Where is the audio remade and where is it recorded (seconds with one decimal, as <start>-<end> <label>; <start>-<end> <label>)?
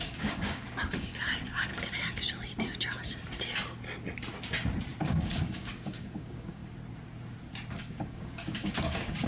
0.0-1.7 remade; 1.7-5.0 recorded; 5.0-6.6 remade; 6.6-7.8 recorded; 7.8-9.3 remade